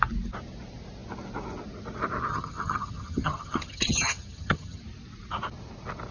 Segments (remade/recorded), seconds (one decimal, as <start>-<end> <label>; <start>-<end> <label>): 0.0-2.3 recorded; 2.3-4.8 remade; 4.8-6.1 recorded